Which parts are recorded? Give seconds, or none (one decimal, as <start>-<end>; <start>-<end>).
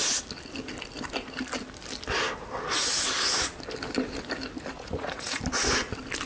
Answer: 0.0-4.7; 5.4-6.3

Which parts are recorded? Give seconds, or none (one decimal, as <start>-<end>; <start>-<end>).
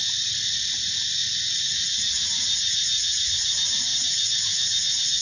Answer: 0.0-5.2